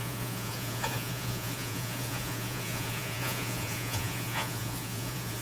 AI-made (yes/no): yes